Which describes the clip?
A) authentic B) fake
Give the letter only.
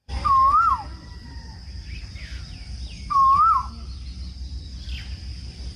A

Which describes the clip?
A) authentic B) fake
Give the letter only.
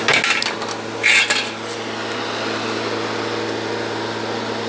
A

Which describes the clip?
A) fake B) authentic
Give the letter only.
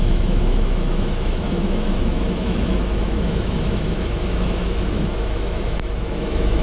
A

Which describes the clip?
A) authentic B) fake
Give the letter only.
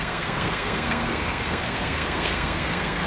B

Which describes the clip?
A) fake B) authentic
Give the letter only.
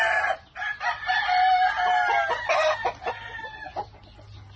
B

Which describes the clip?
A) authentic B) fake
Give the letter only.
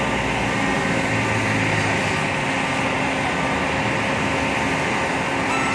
A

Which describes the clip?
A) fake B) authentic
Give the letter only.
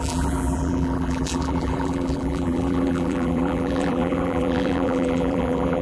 A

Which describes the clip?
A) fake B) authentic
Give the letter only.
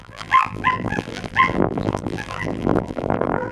A